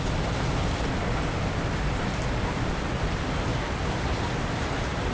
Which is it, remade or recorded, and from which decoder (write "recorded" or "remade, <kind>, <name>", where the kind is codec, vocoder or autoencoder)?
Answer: recorded